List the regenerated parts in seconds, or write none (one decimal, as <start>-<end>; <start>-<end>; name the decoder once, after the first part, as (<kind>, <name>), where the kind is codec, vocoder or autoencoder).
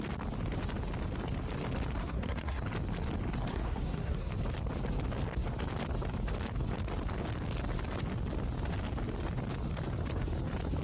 2.0-2.6 (codec, SNAC); 3.5-4.3